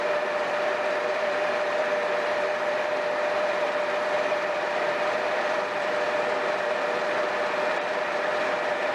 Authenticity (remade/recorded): remade